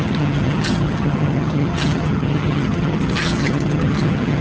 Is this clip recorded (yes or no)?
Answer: no